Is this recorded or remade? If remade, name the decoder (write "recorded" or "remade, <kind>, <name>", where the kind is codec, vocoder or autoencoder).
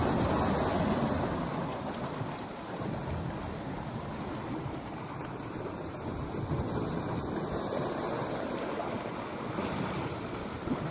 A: recorded